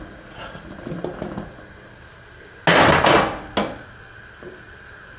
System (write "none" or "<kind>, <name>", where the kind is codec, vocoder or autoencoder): none